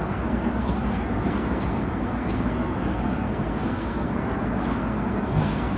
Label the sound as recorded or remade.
remade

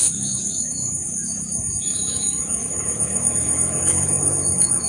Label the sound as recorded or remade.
remade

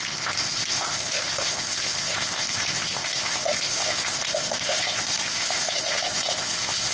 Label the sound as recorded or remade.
remade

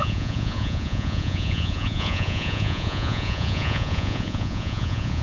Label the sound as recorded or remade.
remade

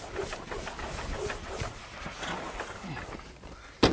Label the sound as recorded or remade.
recorded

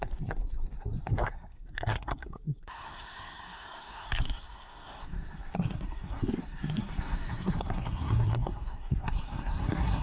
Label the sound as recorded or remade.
remade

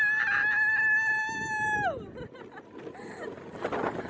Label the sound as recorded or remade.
recorded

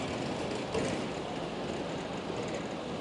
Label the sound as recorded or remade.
recorded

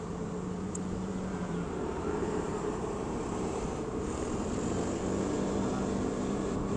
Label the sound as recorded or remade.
remade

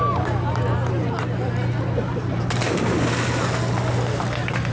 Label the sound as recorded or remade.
recorded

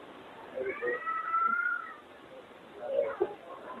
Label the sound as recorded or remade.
remade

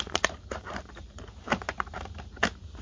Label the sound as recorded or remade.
remade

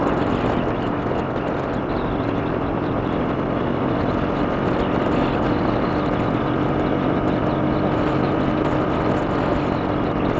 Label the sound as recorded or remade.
recorded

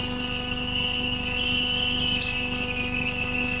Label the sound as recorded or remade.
recorded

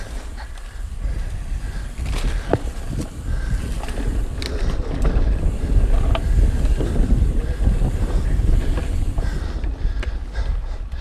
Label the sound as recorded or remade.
recorded